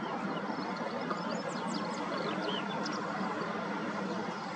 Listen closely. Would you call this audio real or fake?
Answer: real